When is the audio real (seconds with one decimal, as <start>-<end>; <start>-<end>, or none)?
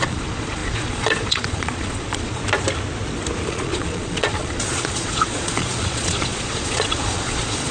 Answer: 2.4-3.5